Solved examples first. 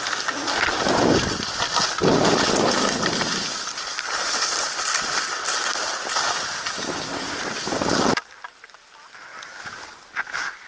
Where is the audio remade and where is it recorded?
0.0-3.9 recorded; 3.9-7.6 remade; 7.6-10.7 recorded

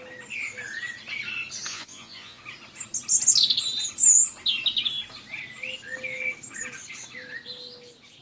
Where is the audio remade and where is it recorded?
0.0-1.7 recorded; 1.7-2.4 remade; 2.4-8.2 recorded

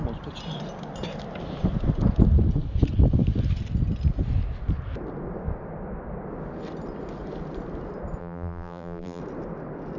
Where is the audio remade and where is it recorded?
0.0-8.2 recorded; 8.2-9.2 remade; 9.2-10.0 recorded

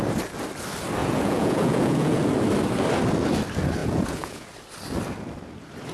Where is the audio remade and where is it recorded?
0.0-1.0 recorded; 1.0-2.3 remade; 2.3-3.8 recorded; 3.8-4.5 remade; 4.5-5.9 recorded